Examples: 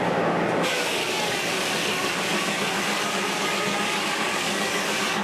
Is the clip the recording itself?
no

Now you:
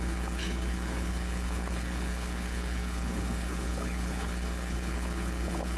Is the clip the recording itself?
no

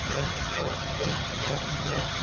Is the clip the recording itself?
no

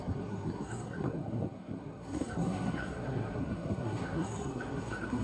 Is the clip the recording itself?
no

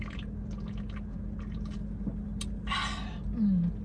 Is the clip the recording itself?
yes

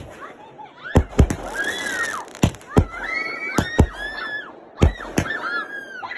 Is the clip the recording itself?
yes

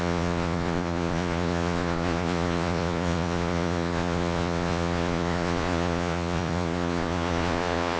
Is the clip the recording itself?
no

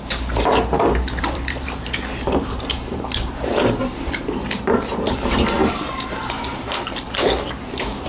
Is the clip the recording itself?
no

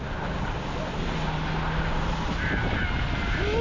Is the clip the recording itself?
yes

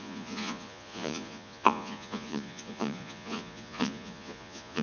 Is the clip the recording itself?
no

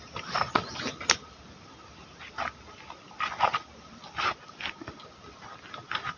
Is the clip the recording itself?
yes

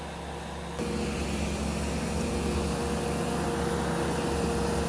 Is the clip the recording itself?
yes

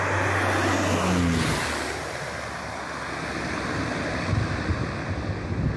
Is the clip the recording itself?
yes